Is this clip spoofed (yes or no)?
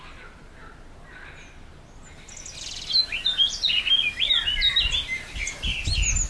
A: no